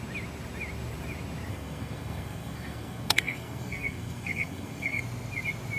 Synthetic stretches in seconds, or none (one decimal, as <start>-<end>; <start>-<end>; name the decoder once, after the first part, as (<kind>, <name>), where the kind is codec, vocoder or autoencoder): 1.5-5.0 (codec, SNAC)